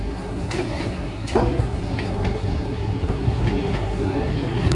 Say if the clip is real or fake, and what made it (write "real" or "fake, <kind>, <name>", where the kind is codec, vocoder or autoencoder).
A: fake, codec, SNAC